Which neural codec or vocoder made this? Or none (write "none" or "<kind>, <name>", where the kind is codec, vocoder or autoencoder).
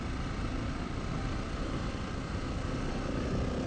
none